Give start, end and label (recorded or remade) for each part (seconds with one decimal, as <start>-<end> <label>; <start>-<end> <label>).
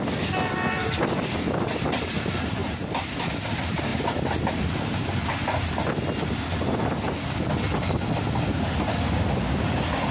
0.0-10.1 recorded